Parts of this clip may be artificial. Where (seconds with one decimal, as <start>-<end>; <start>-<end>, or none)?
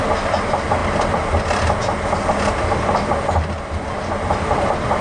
none